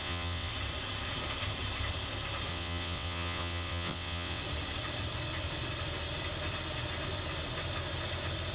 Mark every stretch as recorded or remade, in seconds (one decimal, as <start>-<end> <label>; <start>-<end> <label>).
0.0-0.5 remade; 0.5-2.5 recorded; 2.5-4.4 remade; 4.4-8.5 recorded